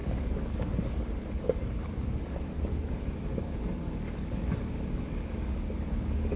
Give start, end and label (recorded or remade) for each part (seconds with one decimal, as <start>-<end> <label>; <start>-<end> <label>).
0.0-6.4 remade